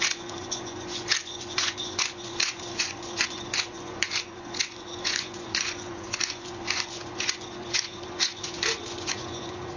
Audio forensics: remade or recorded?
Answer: remade